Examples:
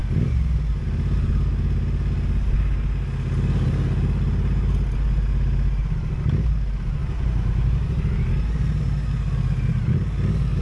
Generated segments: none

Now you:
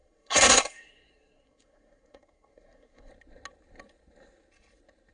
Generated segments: 0.0-3.1 (codec, SNAC)

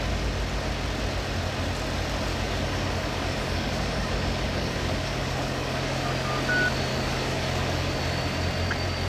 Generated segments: 2.3-6.1 (codec, DAC); 6.9-8.0